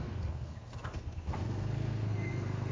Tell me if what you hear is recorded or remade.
remade